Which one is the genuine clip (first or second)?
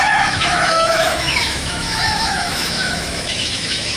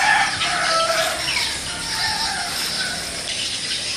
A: second